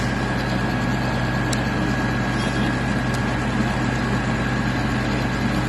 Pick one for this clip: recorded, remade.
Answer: recorded